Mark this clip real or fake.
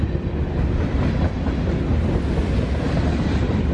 real